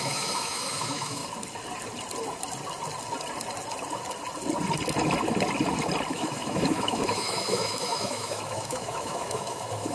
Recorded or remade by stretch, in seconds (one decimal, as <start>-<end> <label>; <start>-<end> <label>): 0.0-1.2 remade; 1.2-6.1 recorded; 6.1-9.9 remade